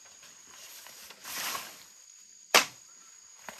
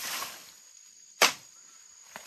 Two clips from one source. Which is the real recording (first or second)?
first